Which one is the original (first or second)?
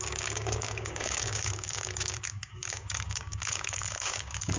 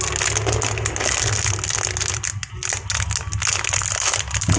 second